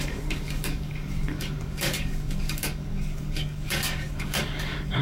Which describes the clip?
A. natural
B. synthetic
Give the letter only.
B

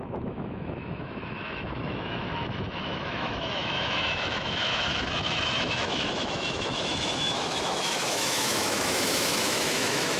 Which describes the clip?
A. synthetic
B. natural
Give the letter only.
A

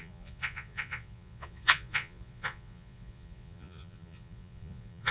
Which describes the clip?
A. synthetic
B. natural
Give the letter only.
A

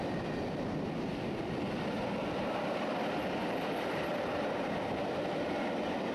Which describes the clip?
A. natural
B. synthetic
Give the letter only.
A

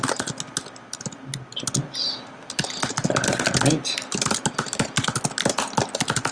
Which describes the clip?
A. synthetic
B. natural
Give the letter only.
B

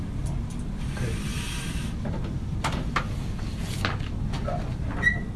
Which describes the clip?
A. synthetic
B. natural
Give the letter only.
B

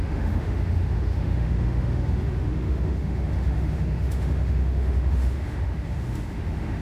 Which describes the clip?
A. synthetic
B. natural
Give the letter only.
A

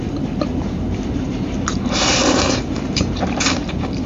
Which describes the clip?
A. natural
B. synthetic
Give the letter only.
B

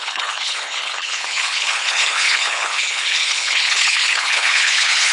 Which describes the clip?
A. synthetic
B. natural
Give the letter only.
A